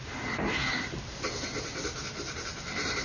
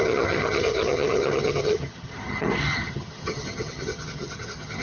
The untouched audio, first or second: first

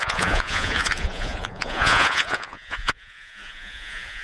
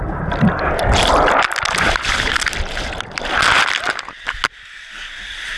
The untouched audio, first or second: second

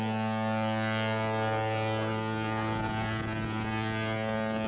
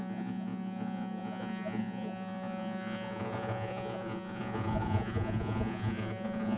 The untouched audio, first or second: first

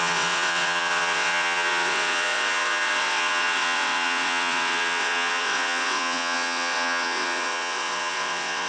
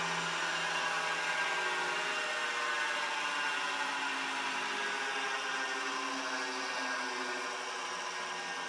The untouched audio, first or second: second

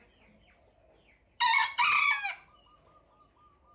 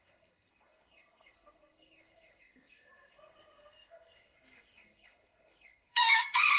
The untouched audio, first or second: first